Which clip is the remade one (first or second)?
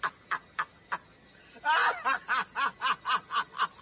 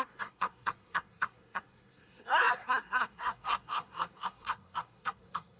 second